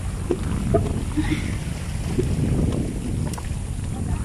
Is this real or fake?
real